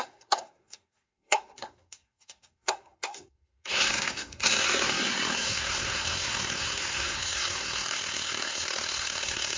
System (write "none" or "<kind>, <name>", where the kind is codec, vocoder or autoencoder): codec, SNAC